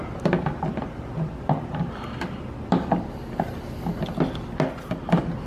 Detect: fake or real real